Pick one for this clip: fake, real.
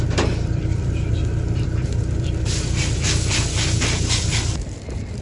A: fake